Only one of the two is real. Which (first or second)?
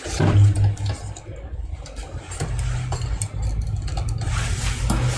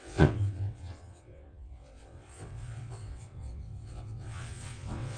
first